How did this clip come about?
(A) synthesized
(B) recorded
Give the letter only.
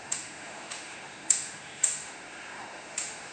A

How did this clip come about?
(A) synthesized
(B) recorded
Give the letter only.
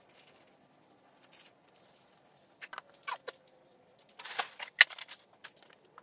B